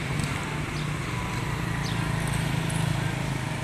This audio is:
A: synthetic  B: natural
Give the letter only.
B